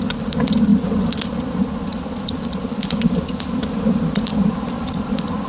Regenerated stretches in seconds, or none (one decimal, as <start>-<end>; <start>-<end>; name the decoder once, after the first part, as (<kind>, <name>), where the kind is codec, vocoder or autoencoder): none